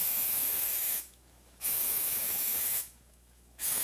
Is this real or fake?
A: fake